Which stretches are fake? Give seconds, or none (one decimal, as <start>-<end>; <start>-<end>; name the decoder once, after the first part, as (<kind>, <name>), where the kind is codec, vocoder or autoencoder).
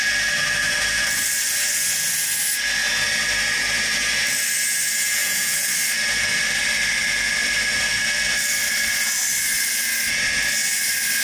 5.2-5.7 (vocoder, Vocos)